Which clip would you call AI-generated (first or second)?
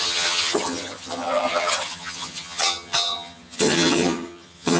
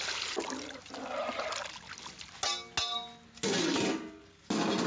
first